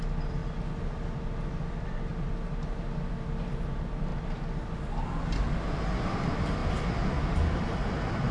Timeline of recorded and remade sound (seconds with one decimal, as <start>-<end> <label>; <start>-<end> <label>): 0.0-0.4 remade; 0.4-1.5 recorded; 1.5-2.1 remade; 2.1-3.1 recorded; 3.1-4.1 remade; 4.1-6.0 recorded; 6.0-6.6 remade; 6.6-7.2 recorded; 7.2-8.3 remade